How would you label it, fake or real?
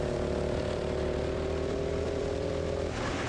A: fake